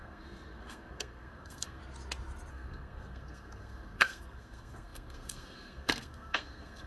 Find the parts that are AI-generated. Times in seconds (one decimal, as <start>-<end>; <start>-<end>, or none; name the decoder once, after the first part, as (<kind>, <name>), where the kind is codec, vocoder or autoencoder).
0.0-1.8 (codec, SNAC); 2.5-6.9